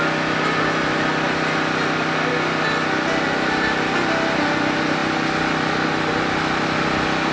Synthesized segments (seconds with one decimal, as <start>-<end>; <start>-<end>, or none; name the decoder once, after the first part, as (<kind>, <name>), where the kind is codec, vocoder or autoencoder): none

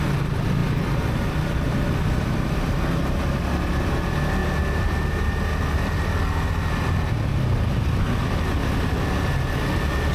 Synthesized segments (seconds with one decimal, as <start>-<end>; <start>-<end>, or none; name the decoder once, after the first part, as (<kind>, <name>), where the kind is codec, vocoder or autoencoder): none

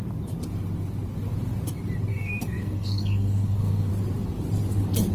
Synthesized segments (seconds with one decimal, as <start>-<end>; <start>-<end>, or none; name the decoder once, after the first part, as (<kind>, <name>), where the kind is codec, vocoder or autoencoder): 2.1-3.9 (codec, SNAC)